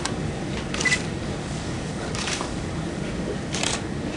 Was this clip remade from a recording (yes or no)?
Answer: yes